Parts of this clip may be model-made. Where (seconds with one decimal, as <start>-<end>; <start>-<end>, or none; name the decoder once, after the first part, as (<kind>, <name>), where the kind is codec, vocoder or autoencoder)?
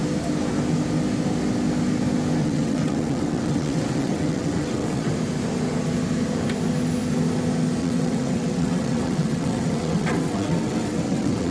2.4-5.1 (vocoder, WaveNeXt); 7.8-11.5